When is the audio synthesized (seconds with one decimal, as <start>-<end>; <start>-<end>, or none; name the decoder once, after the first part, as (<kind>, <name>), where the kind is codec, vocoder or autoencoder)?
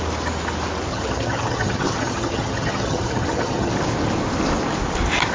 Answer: 0.9-3.7 (vocoder, HiFi-GAN)